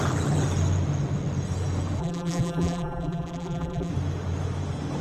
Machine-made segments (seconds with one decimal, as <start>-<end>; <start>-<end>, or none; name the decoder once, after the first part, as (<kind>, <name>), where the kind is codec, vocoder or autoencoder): 2.0-3.9 (vocoder, BigVGAN v2)